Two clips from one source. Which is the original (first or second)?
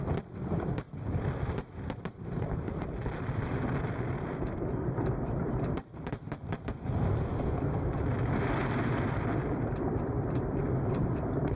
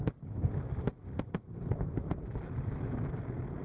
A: second